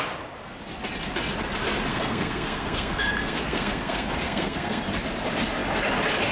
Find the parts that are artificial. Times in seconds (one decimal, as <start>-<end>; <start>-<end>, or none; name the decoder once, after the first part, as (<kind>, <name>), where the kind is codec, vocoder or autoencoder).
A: 1.9-4.8 (codec, SNAC)

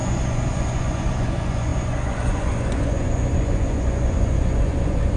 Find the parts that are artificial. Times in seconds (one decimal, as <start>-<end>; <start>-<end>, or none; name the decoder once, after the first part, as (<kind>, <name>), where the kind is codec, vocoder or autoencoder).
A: 0.0-5.2 (vocoder, Vocos)

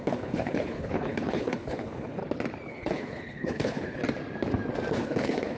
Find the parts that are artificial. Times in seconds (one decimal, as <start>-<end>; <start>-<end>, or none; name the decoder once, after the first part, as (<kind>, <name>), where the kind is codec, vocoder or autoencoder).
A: 0.0-2.2 (codec, HILCodec); 2.7-4.0; 4.9-5.6

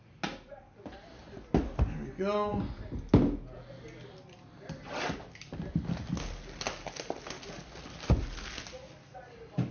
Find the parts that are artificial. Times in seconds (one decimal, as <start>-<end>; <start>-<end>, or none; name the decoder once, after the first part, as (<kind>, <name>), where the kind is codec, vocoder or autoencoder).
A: none